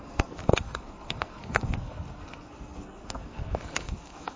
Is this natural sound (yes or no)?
no